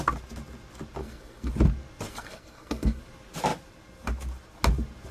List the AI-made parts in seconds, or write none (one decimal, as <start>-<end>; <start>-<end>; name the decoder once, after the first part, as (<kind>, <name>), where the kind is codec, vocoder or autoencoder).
1.0-1.5 (codec, SNAC); 2.1-3.0